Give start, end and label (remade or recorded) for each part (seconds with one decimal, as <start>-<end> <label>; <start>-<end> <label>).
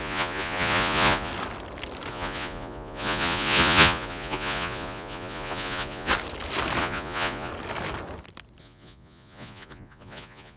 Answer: 0.0-1.3 remade; 1.3-2.1 recorded; 2.1-6.1 remade; 6.1-6.8 recorded; 6.8-7.5 remade; 7.5-8.6 recorded; 8.6-10.6 remade